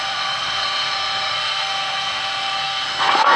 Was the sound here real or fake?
fake